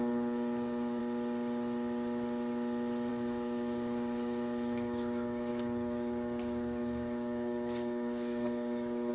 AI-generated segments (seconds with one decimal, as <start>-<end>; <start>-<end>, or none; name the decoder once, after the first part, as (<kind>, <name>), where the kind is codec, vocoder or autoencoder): 0.0-1.0 (codec, DAC); 3.1-9.1